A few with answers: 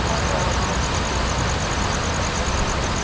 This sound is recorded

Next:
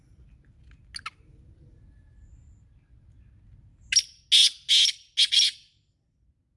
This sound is recorded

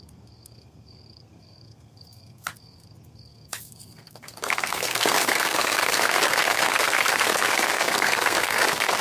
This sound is remade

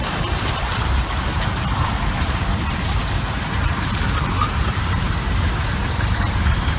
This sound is remade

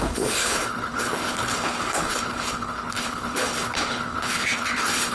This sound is remade